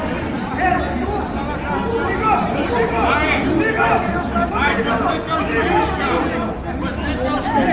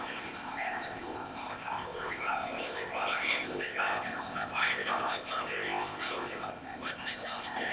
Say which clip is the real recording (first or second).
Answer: first